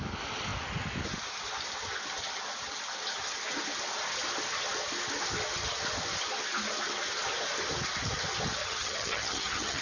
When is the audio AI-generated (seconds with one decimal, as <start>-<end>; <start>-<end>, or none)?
8.6-9.8